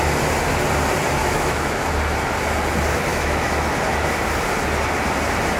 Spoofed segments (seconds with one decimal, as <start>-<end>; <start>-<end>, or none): 1.2-1.9; 3.1-3.7